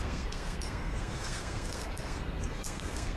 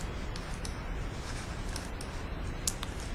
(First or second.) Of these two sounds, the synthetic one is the first